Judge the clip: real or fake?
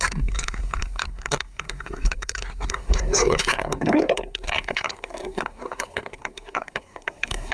fake